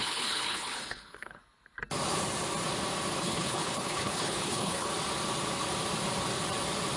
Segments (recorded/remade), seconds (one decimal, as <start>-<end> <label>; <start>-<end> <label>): 0.0-1.4 remade; 1.4-3.2 recorded; 3.2-4.9 remade; 4.9-7.0 recorded